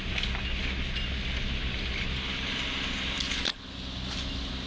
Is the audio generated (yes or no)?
no